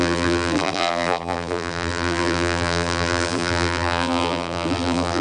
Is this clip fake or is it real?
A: fake